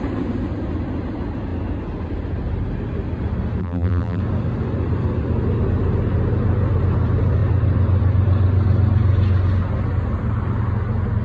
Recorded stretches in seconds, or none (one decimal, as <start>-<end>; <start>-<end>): 0.0-3.6; 4.2-11.2

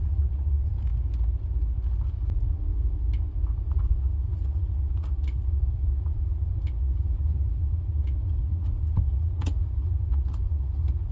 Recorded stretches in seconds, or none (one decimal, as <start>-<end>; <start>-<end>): 0.9-3.6

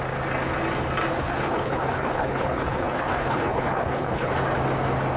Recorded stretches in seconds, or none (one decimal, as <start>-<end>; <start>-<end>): 0.0-1.2; 4.3-5.2

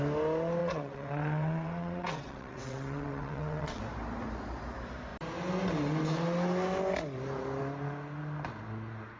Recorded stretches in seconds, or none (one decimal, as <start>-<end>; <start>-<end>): 0.0-0.6; 3.8-9.2

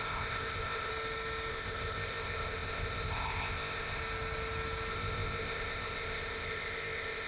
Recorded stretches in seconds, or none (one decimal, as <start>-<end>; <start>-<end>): 0.9-1.5; 4.0-4.9

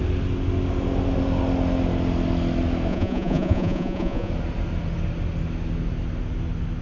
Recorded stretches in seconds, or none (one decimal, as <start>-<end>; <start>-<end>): 0.0-2.9; 4.3-6.8